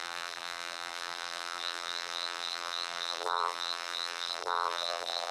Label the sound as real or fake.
fake